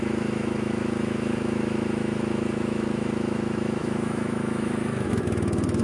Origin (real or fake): fake